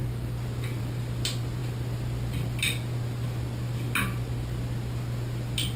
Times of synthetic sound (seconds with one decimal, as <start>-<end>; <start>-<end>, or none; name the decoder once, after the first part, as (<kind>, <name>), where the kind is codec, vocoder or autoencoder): none